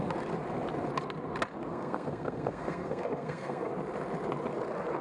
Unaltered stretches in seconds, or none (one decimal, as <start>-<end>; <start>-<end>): 0.0-1.7; 3.7-5.0